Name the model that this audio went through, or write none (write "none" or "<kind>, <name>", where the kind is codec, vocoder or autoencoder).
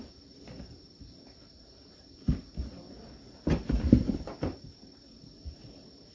none